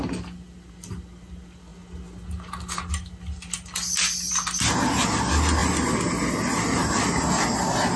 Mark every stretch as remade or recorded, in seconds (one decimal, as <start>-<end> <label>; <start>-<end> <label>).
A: 0.0-8.0 recorded